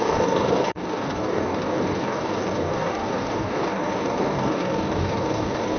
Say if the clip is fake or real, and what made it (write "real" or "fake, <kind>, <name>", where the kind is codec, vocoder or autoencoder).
fake, codec, DAC